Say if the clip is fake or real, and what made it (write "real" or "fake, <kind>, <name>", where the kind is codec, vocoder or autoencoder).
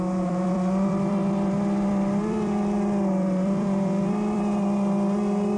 fake, vocoder, BigVGAN v2